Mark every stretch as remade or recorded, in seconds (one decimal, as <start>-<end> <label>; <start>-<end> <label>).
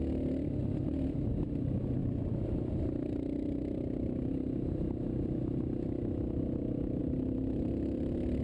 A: 0.0-8.4 recorded